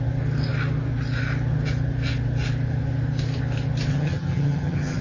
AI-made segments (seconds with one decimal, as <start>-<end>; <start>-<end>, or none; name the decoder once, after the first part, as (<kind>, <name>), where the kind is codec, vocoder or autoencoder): 3.9-5.0 (vocoder, HiFi-GAN)